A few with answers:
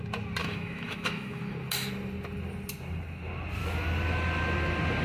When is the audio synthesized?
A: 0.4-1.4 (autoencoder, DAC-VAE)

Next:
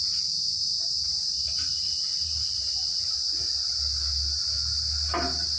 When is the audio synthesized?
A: none

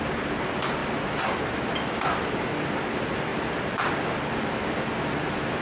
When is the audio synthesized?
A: none